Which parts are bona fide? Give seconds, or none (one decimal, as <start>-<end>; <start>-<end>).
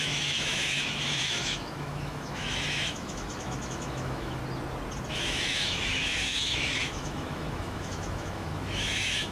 4.4-5.1